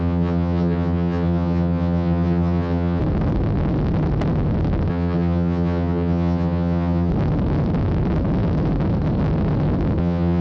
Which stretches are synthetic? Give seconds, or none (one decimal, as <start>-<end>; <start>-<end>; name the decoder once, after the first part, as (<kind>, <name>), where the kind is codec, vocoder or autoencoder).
0.0-3.0 (vocoder, HiFi-GAN); 4.9-7.1; 10.0-10.4